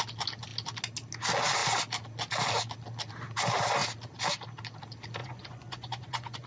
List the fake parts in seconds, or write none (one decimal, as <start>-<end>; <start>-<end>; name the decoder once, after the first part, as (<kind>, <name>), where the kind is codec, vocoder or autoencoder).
5.2-6.5 (vocoder, Vocos)